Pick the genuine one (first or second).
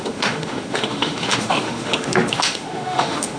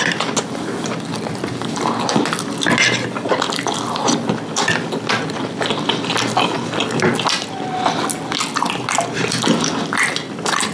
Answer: second